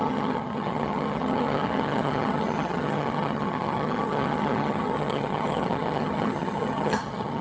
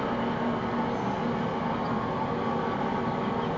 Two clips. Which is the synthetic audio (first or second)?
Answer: first